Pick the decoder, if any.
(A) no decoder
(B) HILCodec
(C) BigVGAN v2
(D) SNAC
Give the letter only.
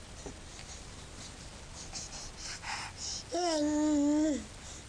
A